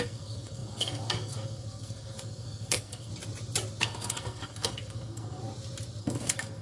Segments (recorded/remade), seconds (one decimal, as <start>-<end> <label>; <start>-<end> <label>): 0.0-3.1 remade; 3.1-3.8 recorded; 3.8-5.4 remade; 5.4-6.0 recorded; 6.0-6.6 remade